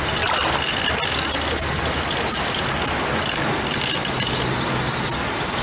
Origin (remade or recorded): recorded